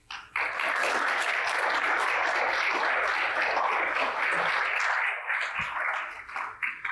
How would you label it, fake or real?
real